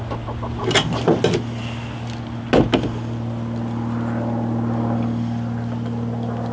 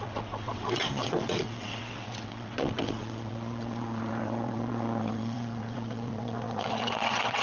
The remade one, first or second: second